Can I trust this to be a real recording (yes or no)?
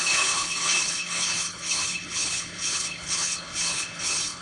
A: no